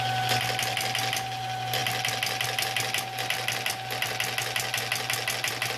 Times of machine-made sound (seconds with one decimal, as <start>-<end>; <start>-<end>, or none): none